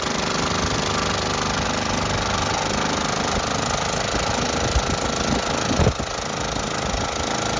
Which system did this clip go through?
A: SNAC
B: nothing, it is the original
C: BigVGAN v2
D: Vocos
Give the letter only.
B